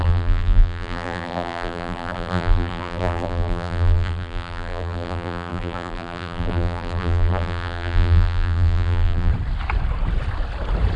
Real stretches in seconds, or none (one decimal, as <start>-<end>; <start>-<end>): 9.3-11.0